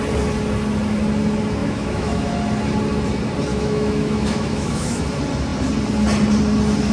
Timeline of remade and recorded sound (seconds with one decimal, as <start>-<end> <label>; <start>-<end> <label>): 0.0-1.6 recorded; 1.6-2.3 remade; 2.3-3.5 recorded; 3.5-5.0 remade; 5.0-6.9 recorded